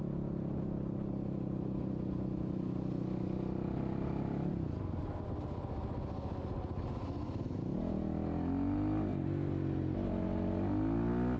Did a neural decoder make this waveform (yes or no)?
no